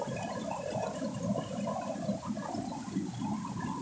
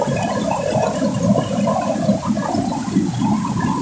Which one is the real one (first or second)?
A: second